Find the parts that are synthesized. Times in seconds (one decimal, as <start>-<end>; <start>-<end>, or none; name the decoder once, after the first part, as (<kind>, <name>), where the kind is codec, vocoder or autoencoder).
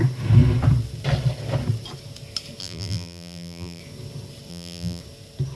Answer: 2.6-3.8 (vocoder, BigVGAN v2); 4.5-5.0